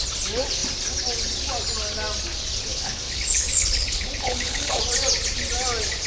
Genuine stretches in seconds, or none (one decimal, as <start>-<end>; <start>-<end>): 0.0-2.7; 4.8-6.1